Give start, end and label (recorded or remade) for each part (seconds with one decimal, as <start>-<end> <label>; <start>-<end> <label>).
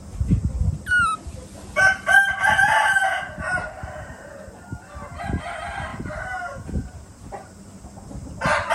0.0-5.9 recorded; 5.9-7.5 remade; 7.5-8.7 recorded